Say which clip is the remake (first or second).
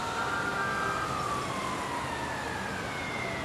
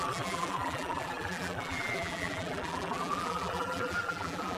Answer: second